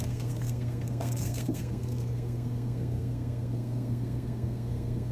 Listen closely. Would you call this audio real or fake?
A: fake